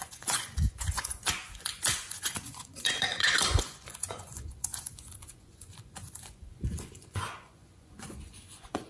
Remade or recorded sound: remade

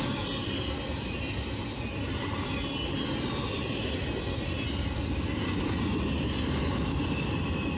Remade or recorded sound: recorded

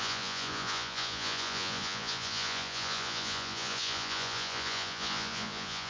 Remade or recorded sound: remade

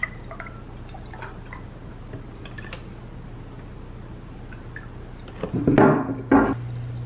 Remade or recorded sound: recorded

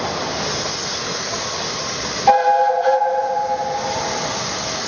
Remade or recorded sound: recorded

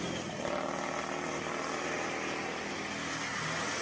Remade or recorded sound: recorded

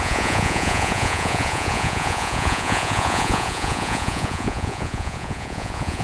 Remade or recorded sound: remade